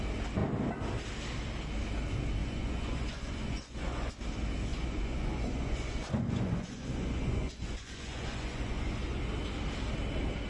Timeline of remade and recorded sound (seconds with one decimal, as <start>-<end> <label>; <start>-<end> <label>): 0.0-2.4 recorded; 2.4-4.1 remade; 4.1-4.7 recorded; 4.7-9.2 remade; 9.2-10.5 recorded